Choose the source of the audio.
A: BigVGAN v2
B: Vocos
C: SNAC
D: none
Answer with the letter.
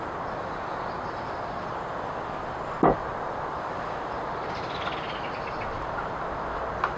D